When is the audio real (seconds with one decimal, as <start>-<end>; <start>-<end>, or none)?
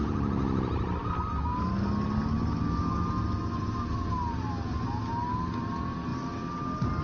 0.0-7.0